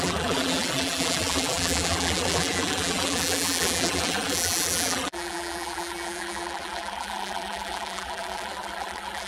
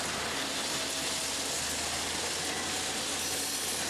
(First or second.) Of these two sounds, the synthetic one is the first